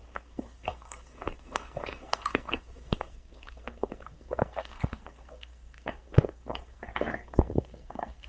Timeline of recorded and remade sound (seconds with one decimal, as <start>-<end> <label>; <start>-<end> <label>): 0.0-8.3 remade